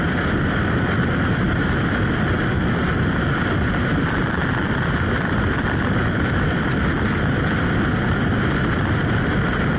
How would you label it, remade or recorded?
recorded